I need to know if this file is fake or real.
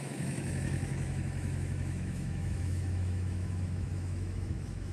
fake